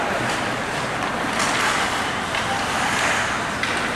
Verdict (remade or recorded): recorded